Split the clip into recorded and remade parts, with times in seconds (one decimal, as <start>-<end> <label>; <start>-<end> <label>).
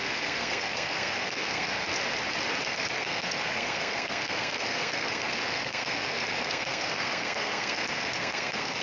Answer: 0.0-1.9 remade; 1.9-2.7 recorded; 2.7-8.8 remade